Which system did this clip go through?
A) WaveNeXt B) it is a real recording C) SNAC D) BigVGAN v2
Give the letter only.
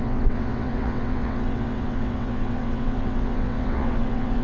A